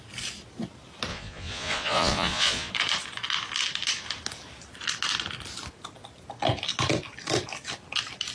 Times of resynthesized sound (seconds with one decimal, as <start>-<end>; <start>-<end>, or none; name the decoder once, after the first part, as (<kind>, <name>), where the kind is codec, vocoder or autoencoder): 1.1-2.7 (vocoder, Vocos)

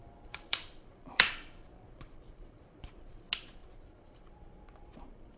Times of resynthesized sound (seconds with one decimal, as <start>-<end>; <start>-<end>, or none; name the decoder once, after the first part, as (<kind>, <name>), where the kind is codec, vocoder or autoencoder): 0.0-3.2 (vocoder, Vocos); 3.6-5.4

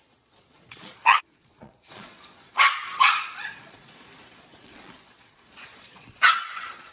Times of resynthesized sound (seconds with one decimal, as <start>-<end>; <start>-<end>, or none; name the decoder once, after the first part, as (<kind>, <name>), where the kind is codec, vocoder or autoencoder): 0.0-6.9 (vocoder, Vocos)

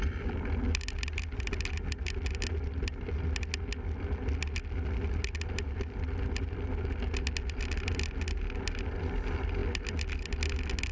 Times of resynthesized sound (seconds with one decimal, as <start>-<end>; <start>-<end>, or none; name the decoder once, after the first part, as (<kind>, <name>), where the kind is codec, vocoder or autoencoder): none